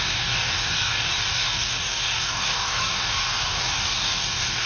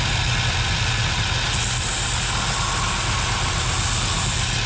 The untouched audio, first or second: second